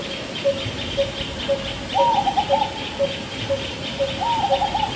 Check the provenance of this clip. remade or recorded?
recorded